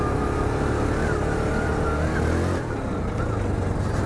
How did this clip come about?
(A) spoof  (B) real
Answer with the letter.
B